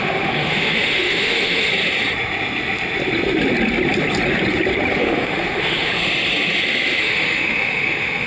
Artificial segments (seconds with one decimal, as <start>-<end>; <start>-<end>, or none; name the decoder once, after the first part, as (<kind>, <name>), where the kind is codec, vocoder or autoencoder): 0.0-1.7 (autoencoder, DAC-VAE); 4.9-5.9; 7.0-8.3